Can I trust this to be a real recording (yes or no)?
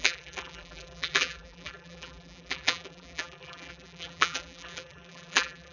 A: no